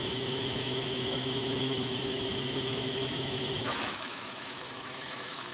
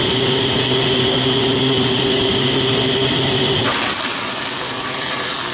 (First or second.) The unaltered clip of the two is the second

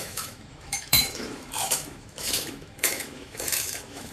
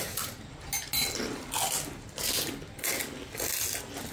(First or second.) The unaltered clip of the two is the second